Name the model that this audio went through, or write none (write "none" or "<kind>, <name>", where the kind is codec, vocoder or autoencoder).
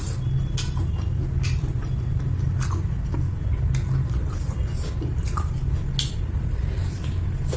none